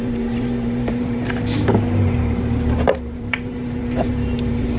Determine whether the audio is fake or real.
fake